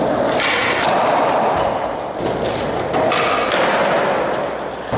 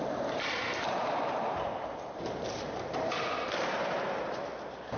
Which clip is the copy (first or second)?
second